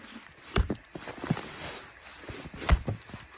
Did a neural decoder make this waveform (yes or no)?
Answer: yes